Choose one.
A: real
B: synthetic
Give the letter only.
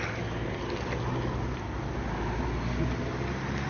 A